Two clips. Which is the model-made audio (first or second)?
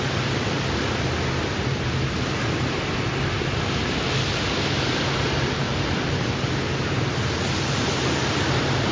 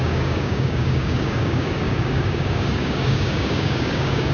second